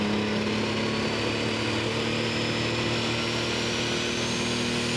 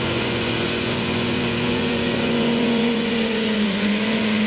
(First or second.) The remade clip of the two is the second